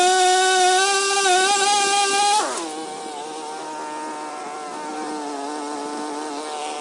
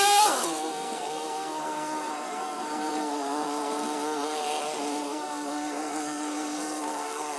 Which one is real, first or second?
first